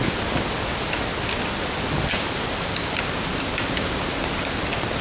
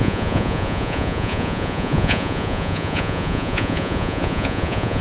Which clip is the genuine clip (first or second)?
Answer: first